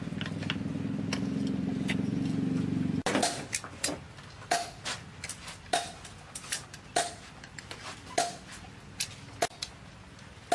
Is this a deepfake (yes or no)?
no